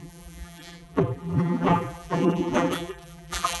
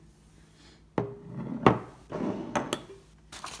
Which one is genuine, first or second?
second